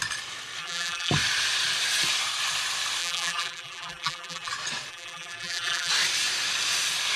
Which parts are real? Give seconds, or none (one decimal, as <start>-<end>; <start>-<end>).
0.0-0.6; 1.1-3.0; 4.5-4.9; 5.9-7.2